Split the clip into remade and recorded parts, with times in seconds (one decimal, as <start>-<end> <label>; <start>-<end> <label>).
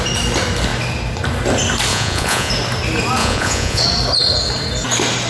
0.0-1.9 recorded; 1.9-2.5 remade; 2.5-3.2 recorded; 3.2-3.8 remade; 3.8-5.3 recorded